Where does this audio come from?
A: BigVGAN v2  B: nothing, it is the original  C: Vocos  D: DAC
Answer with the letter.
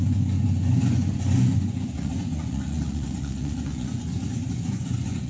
C